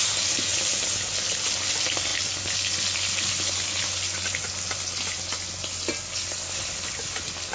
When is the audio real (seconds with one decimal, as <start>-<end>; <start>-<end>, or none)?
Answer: 0.0-7.5